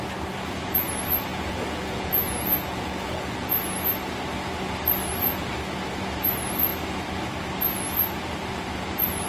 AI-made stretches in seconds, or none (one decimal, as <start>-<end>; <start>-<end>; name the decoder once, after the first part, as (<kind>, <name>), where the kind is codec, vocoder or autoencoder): 1.3-3.9 (vocoder, Vocos)